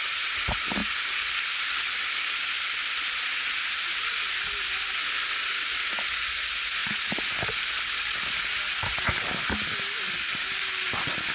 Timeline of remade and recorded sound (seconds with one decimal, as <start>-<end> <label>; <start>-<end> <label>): 0.0-11.3 recorded